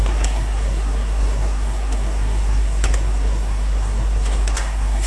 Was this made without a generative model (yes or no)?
no